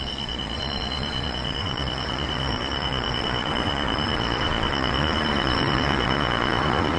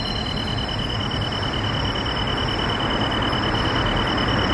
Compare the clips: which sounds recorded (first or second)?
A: second